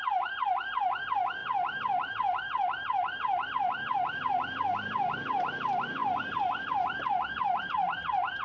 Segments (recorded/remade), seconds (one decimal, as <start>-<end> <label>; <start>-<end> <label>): 0.0-8.4 recorded